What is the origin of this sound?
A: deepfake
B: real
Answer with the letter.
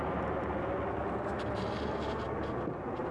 B